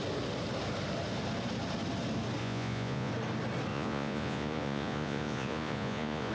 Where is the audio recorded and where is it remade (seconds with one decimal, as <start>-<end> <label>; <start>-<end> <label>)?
0.0-2.4 recorded; 2.4-3.1 remade; 3.1-3.7 recorded; 3.7-6.3 remade